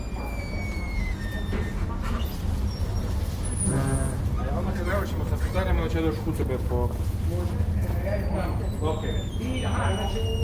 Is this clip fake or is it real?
real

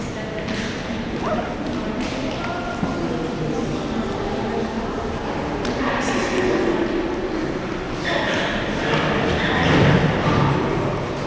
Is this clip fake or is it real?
real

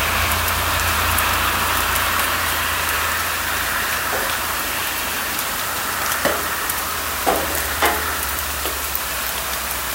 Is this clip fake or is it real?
fake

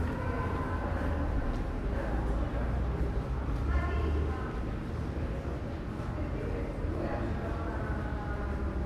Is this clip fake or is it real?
real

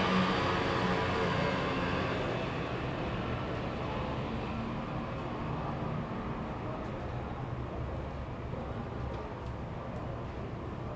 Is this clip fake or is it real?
real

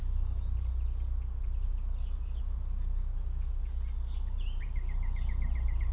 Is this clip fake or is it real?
real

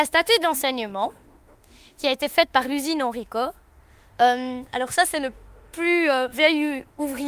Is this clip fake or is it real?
fake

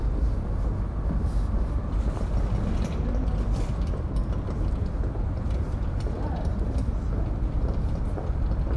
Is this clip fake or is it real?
real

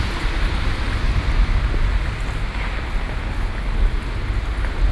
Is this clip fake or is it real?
real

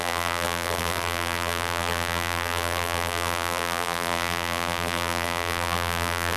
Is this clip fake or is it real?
fake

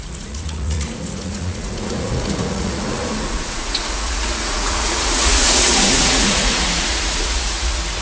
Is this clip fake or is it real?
fake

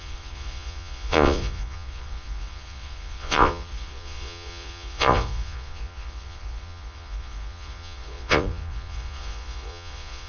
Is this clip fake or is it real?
fake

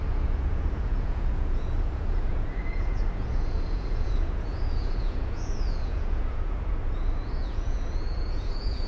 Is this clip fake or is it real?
fake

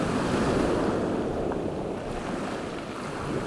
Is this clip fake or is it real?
real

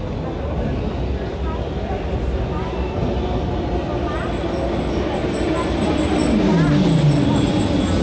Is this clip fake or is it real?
real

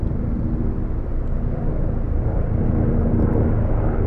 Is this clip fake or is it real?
real